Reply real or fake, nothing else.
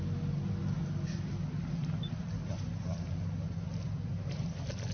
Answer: real